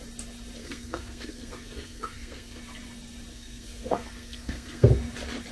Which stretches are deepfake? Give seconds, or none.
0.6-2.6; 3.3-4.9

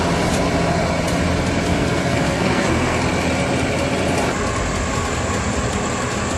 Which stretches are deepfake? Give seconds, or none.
1.7-3.0

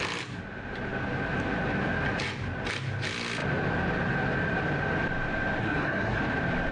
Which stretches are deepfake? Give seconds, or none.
5.6-6.2

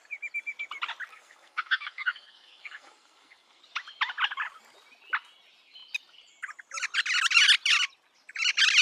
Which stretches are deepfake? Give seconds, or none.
1.1-3.6

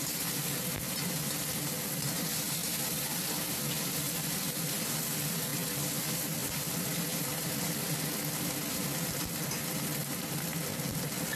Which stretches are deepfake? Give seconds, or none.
none

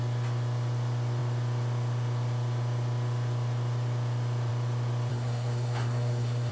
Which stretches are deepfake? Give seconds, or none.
5.1-6.5

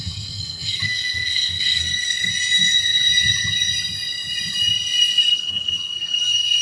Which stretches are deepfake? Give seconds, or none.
0.0-2.3; 5.2-6.6